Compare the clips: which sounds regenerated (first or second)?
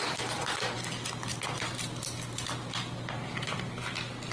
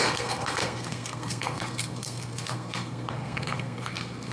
second